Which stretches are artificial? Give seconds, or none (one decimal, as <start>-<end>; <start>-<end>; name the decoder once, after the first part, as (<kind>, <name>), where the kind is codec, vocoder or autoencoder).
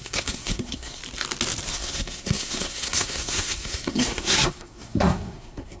0.0-1.0 (codec, SNAC); 1.7-5.8